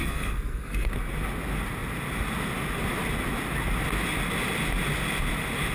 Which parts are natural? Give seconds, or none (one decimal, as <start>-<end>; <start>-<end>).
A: 0.9-5.7